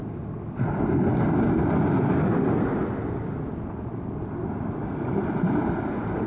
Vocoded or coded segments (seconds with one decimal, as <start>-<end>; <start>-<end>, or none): none